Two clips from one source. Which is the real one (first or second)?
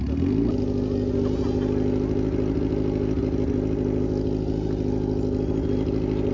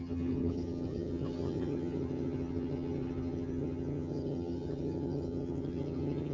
first